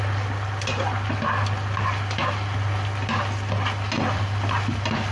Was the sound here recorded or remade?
recorded